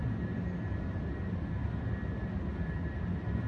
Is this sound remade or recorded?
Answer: recorded